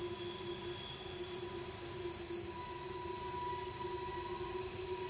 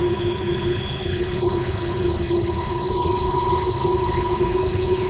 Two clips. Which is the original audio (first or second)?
first